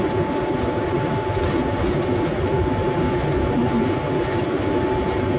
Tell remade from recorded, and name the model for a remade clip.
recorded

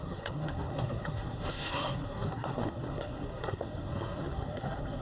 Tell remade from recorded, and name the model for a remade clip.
remade, codec, SNAC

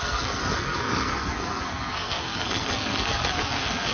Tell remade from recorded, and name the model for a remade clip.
remade, codec, SNAC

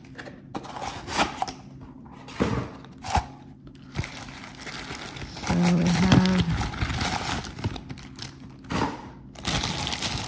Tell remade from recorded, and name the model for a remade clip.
recorded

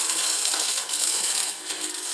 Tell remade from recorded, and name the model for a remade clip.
remade, codec, SNAC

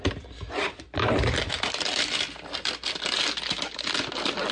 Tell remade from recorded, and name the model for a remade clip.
recorded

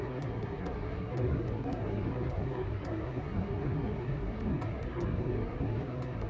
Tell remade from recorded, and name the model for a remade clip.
remade, codec, SNAC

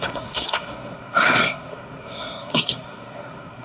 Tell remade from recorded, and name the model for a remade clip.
remade, codec, SNAC